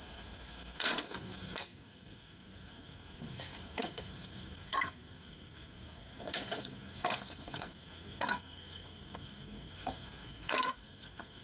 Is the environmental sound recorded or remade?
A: remade